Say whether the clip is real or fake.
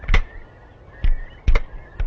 real